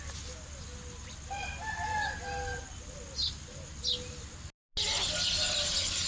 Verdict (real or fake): real